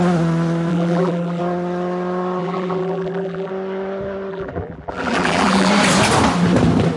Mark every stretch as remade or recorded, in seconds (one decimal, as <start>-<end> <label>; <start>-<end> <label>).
0.0-0.7 recorded; 0.7-1.4 remade; 1.4-2.4 recorded; 2.4-3.5 remade; 3.5-4.3 recorded; 4.3-5.7 remade; 5.7-7.0 recorded